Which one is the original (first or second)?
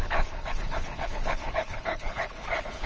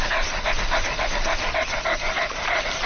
second